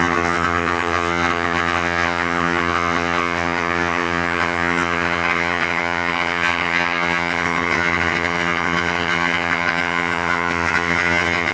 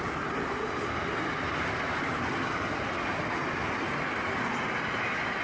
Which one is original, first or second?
second